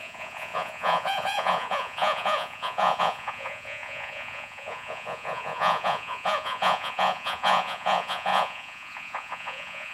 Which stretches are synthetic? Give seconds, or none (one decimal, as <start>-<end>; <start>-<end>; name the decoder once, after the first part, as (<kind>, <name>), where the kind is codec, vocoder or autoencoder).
0.0-9.9 (vocoder, Vocos)